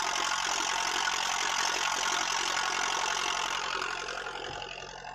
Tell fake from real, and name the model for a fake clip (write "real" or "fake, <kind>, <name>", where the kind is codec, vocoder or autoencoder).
real